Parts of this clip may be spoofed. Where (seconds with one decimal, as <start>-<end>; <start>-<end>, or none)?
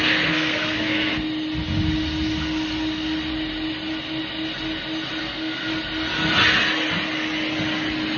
0.0-1.1; 5.2-5.7